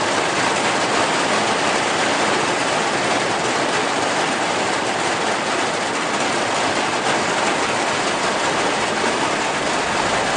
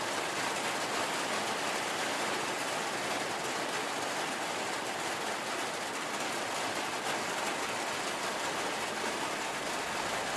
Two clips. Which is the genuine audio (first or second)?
second